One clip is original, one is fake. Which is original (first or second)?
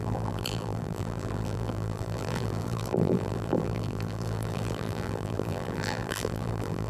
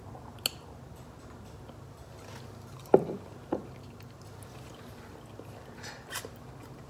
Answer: second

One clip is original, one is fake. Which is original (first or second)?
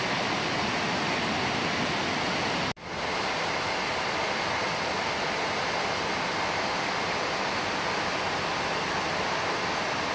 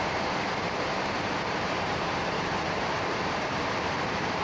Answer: first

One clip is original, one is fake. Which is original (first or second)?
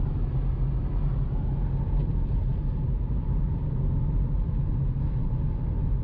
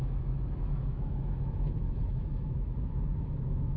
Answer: first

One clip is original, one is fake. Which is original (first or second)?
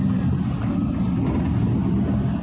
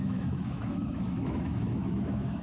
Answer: first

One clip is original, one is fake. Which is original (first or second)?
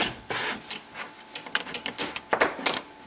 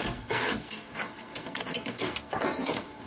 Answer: first